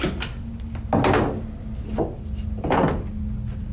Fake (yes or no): no